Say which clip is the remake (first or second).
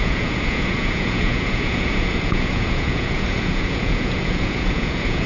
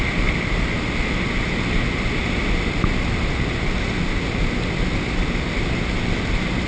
first